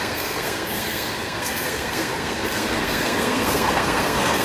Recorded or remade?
remade